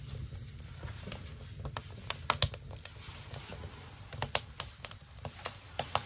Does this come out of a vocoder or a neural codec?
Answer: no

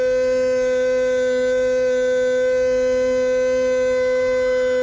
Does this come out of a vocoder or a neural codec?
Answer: no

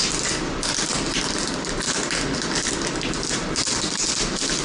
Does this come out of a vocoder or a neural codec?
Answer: no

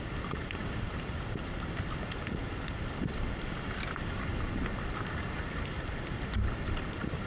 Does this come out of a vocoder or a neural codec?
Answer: no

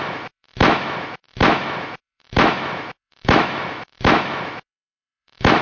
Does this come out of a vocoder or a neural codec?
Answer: yes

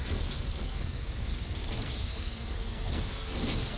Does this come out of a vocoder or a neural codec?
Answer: yes